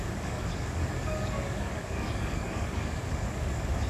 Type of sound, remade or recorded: remade